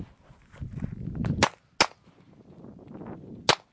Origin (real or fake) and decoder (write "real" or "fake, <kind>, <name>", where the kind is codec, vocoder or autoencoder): real